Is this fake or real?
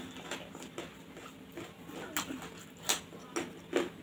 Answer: real